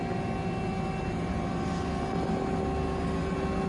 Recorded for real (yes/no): yes